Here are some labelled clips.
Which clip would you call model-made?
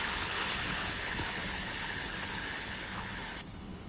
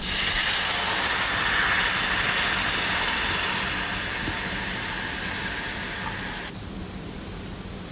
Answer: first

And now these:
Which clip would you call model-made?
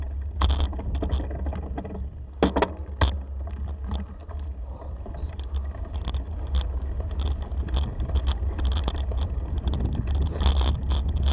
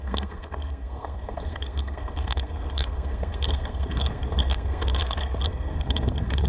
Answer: second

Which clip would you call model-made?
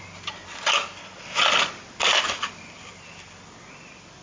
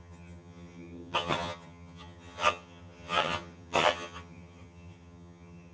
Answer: second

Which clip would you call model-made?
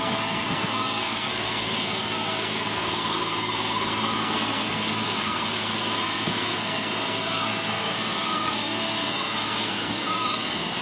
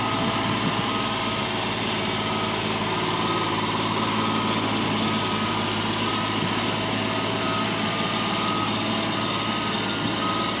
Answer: first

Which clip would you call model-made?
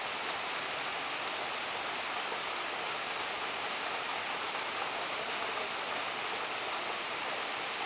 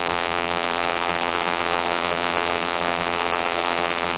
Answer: second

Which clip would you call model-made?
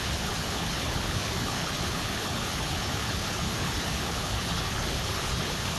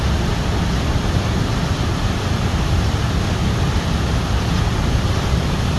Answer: first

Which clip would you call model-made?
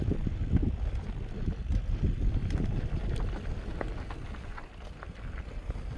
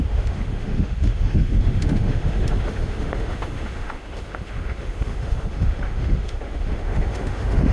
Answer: second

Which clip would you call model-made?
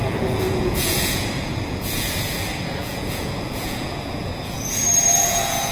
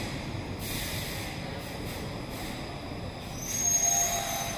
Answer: first